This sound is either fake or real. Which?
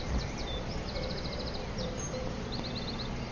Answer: real